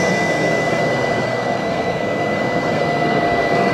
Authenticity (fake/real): fake